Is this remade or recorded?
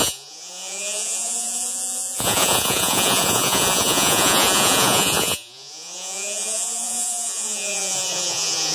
remade